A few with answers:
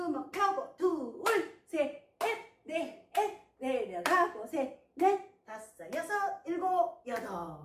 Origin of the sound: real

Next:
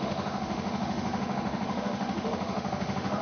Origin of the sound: fake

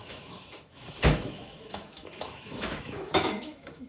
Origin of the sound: fake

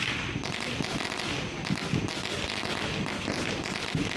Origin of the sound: real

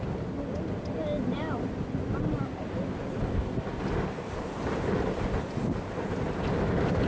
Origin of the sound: real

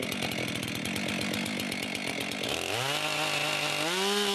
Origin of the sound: real